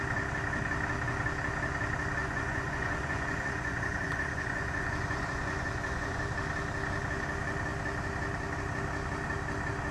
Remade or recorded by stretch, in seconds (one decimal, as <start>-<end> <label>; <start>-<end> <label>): 0.0-2.2 recorded; 2.2-6.2 remade; 6.2-9.9 recorded